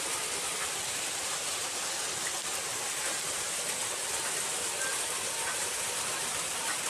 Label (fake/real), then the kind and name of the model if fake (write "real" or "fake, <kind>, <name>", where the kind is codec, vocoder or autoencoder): real